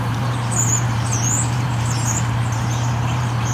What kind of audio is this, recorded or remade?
remade